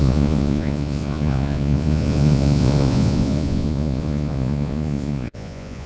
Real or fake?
fake